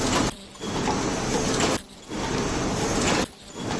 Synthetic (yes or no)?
no